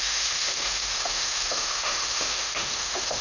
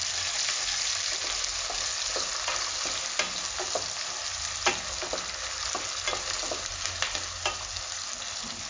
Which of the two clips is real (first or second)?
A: second